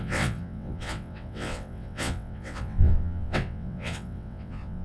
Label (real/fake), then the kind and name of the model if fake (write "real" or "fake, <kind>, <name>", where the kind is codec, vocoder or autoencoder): fake, vocoder, WaveNeXt